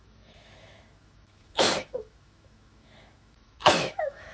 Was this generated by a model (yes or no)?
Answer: yes